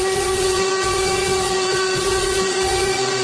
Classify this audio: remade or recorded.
remade